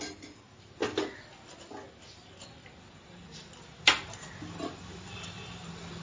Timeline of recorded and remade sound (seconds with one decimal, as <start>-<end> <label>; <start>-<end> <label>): 0.0-6.0 recorded